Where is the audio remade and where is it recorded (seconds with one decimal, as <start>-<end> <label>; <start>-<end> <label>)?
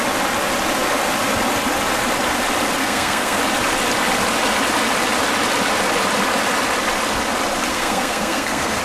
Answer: 0.0-2.8 recorded; 2.8-3.4 remade; 3.4-7.7 recorded; 7.7-8.8 remade